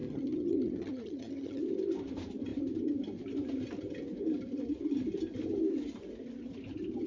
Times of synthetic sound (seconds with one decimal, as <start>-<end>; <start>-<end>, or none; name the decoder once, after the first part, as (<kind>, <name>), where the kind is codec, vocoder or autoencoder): 0.0-1.6 (vocoder, HiFi-GAN)